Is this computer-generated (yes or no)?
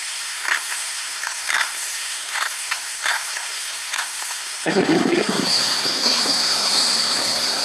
yes